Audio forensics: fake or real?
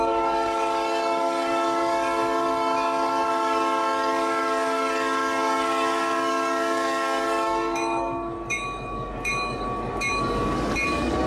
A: fake